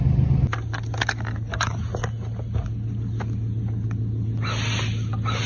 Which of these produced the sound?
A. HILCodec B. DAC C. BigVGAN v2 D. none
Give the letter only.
D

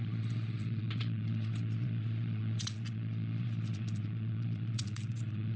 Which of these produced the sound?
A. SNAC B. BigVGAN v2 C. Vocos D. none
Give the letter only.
C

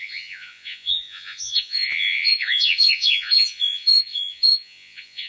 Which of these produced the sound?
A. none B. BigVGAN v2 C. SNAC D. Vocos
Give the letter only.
D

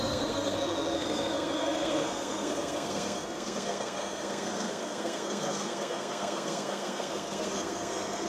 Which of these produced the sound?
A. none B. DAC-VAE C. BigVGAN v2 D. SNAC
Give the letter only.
D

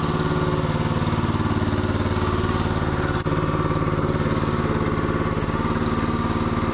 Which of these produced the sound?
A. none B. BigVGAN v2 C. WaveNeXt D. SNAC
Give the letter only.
A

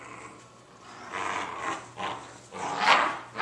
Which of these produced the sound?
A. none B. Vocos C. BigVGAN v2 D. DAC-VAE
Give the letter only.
A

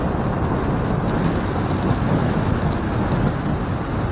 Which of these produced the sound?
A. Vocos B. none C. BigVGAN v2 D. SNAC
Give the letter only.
B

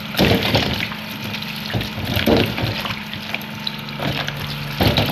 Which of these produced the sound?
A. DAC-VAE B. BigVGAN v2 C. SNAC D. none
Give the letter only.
D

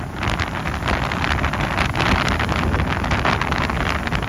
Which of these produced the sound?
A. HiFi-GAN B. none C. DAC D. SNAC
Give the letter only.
B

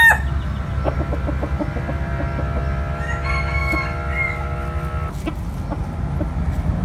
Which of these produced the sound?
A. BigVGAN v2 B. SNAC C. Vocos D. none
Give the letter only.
D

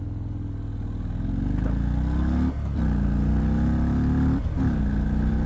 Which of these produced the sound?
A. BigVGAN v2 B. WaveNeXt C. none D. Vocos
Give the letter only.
C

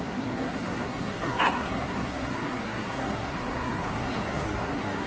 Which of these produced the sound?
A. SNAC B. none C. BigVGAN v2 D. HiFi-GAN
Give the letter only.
A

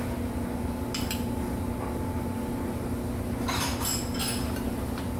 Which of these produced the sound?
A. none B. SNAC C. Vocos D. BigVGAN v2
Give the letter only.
A